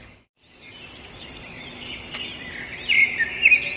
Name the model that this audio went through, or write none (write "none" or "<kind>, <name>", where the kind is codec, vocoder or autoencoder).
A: none